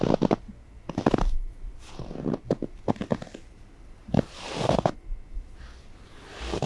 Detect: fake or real real